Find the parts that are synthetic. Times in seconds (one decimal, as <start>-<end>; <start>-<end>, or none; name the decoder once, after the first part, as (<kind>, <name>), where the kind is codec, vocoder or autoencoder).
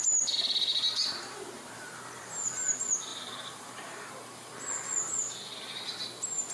0.7-2.7 (vocoder, BigVGAN v2); 3.1-4.1